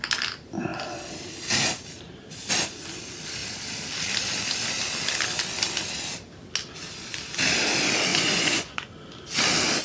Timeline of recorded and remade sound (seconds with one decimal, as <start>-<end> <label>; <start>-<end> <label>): 0.0-8.1 recorded; 8.1-8.9 remade; 8.9-9.8 recorded